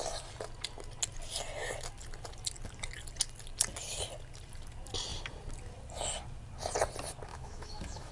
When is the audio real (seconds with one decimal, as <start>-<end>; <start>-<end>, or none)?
0.0-7.3